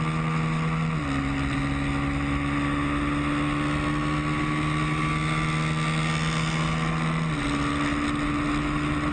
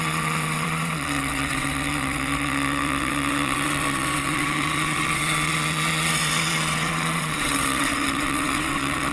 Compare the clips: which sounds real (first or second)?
first